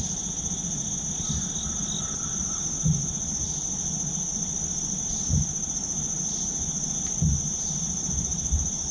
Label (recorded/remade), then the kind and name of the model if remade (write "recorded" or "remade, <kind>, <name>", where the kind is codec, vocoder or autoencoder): recorded